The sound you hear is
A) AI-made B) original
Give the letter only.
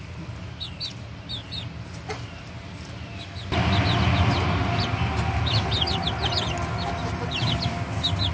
B